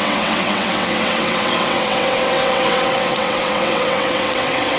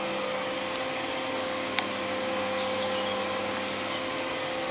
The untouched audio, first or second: second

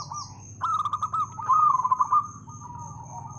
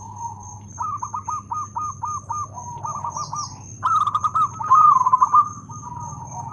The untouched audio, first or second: first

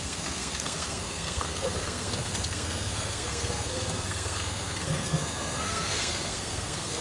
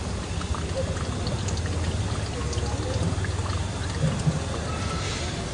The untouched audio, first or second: second